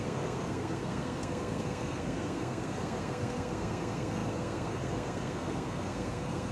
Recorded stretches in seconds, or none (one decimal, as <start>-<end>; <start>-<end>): none